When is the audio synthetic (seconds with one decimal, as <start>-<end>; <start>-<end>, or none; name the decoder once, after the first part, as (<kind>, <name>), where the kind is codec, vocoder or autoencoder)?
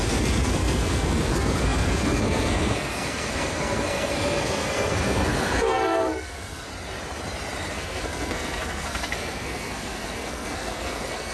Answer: 0.0-6.7 (codec, SNAC); 7.7-11.3